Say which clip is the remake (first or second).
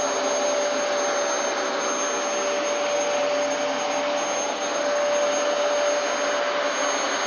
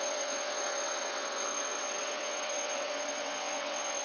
second